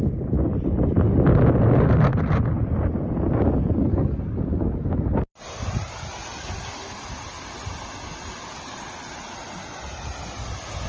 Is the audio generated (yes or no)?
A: no